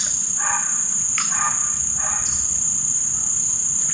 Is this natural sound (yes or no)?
yes